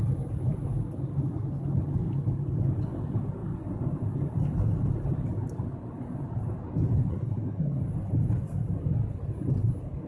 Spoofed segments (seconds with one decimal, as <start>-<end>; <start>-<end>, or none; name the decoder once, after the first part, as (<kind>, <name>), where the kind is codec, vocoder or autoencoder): 7.1-7.8 (codec, SNAC)